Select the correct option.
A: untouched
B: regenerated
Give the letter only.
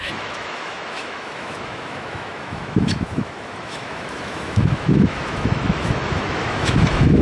B